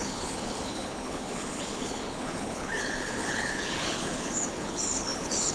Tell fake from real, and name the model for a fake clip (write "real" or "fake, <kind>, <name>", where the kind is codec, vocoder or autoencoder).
fake, codec, HILCodec